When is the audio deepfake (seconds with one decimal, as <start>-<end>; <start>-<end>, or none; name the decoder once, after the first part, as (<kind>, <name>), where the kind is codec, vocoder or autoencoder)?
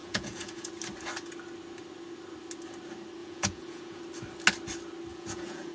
0.0-0.7 (vocoder, Vocos); 3.2-4.0; 5.1-5.7